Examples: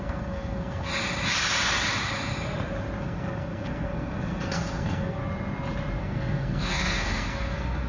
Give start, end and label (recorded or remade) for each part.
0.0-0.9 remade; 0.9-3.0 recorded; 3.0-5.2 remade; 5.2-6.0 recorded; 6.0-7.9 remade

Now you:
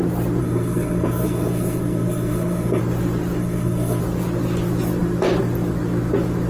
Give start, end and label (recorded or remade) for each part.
0.0-0.4 recorded; 0.4-2.8 remade; 2.8-3.4 recorded; 3.4-4.0 remade; 4.0-6.5 recorded

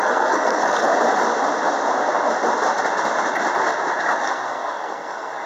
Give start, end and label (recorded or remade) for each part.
0.0-0.9 remade; 0.9-4.2 recorded; 4.2-5.5 remade

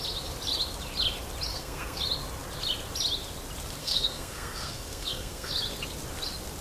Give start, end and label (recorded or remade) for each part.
0.0-1.5 recorded; 1.5-2.0 remade; 2.0-3.8 recorded; 3.8-5.5 remade; 5.5-6.6 recorded

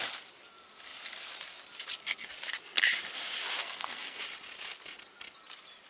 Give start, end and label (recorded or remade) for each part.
0.0-3.6 recorded; 3.6-4.2 remade; 4.2-5.9 recorded

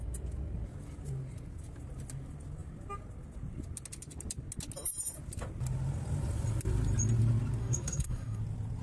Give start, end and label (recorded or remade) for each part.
0.0-7.6 recorded; 7.6-8.4 remade; 8.4-8.8 recorded